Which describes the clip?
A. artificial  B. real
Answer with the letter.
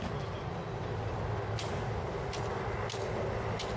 B